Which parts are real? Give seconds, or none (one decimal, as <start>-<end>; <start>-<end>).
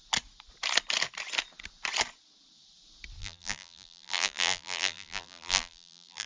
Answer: 0.0-3.2